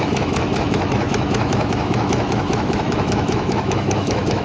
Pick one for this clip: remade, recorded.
remade